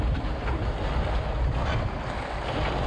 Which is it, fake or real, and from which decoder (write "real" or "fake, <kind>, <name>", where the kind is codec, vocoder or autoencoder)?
real